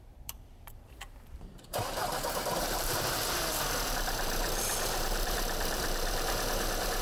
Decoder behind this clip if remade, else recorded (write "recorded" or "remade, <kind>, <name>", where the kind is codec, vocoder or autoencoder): remade, vocoder, BigVGAN v2